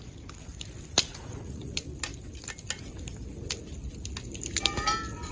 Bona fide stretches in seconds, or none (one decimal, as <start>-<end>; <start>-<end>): 0.0-1.1; 1.7-5.3